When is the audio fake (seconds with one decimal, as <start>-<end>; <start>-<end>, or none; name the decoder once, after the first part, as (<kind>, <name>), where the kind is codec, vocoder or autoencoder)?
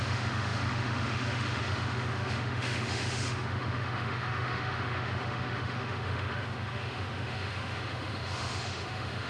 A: 0.0-9.3 (autoencoder, DAC-VAE)